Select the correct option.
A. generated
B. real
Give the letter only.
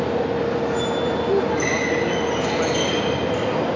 B